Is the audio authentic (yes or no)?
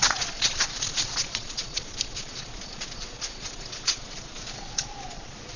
no